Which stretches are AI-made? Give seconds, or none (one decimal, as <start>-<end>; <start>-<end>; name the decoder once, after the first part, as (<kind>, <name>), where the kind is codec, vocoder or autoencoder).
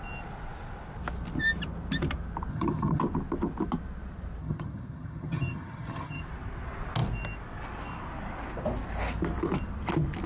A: 2.5-3.0 (vocoder, HiFi-GAN); 4.4-6.2